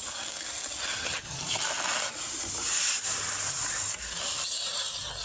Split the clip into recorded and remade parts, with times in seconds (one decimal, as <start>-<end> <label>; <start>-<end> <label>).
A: 0.0-0.9 recorded; 0.9-1.4 remade; 1.4-5.2 recorded